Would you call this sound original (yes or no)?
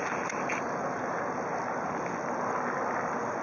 yes